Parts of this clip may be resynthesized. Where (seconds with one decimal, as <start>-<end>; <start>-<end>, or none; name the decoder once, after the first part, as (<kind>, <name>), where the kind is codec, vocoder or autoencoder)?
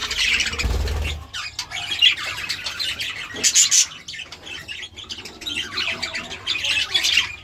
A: none